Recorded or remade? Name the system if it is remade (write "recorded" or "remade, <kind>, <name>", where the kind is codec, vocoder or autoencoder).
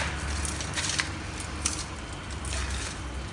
recorded